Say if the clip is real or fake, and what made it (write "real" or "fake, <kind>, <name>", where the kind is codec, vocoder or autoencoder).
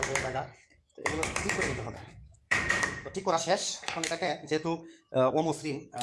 fake, codec, DAC